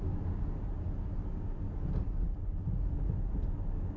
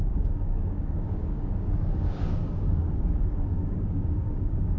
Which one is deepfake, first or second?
second